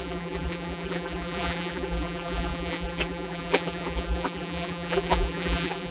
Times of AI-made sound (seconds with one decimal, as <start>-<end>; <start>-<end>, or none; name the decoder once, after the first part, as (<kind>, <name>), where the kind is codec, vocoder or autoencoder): 0.0-5.9 (vocoder, BigVGAN v2)

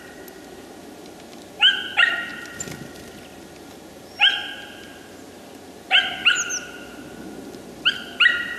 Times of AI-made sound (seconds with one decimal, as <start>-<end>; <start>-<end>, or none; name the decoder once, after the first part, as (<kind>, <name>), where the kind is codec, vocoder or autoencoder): none

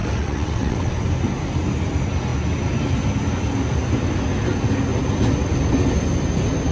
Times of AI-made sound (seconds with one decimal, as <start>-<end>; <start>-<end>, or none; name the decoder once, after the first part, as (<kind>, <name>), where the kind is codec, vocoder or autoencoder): 0.0-0.9 (vocoder, WaveNeXt)

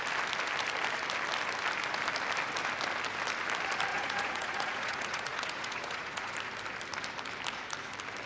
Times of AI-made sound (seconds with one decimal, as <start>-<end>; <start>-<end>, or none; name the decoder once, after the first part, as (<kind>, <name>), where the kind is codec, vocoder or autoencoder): 3.9-6.3 (vocoder, Vocos)

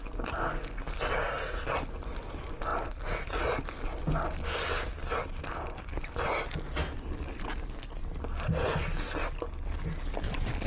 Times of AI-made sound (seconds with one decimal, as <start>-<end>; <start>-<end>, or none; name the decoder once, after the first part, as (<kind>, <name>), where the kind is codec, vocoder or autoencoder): none

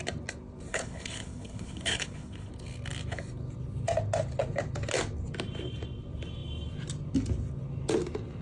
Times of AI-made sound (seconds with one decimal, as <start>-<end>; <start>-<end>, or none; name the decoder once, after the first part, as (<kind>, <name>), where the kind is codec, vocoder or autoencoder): 0.7-2.5 (codec, HILCodec)